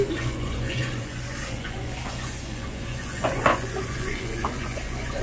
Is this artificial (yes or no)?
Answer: yes